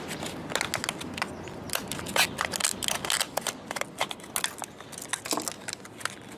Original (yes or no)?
yes